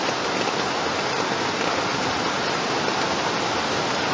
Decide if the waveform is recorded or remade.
recorded